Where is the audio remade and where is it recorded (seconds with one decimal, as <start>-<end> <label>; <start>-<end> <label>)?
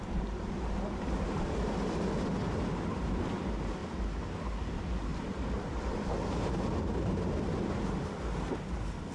0.0-9.1 recorded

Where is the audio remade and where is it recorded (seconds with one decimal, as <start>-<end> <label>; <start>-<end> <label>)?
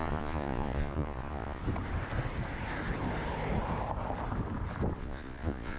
0.0-1.6 remade; 1.6-5.0 recorded; 5.0-5.8 remade